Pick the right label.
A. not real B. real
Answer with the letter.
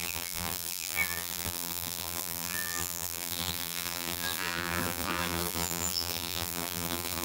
A